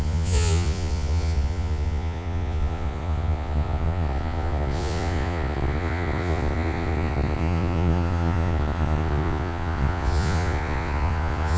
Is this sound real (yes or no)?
no